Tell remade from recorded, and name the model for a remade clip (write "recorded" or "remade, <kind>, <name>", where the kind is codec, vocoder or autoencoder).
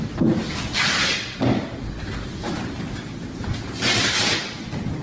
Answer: recorded